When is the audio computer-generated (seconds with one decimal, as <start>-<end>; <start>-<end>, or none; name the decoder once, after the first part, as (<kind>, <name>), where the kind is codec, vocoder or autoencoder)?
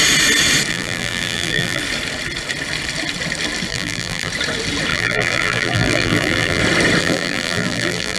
0.7-1.8 (vocoder, BigVGAN v2); 3.7-4.3; 4.9-6.6; 7.0-8.2